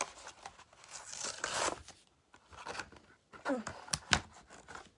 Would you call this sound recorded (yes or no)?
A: yes